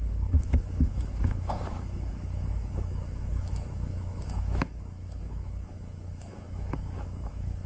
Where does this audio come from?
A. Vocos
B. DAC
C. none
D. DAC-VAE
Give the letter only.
D